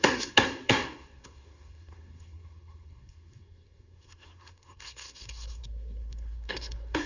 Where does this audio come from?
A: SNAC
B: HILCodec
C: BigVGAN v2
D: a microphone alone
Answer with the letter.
A